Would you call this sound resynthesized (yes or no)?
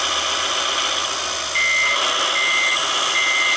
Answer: no